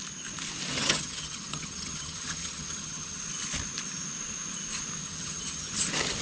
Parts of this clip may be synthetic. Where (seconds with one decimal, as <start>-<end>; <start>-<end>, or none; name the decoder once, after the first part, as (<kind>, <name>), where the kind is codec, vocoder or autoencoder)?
0.7-3.2 (vocoder, HiFi-GAN); 5.0-5.7